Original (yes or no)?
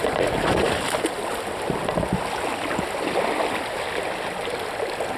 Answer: yes